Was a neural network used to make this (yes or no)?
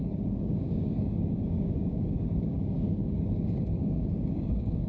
yes